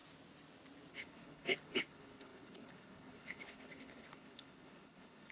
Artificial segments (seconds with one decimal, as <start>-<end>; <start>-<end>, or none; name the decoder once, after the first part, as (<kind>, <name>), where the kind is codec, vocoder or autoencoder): 0.9-5.3 (codec, HILCodec)